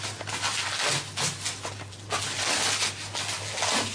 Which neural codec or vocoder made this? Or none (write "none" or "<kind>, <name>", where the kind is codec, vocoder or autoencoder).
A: none